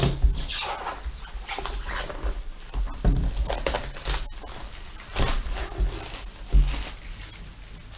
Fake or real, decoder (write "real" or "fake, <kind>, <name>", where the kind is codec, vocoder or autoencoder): real